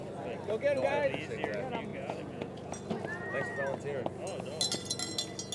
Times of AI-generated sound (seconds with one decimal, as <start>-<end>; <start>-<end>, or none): 1.9-2.7